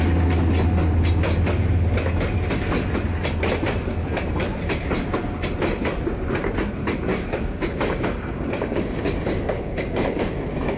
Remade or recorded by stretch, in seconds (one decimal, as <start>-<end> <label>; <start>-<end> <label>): 0.0-7.1 recorded; 7.1-10.8 remade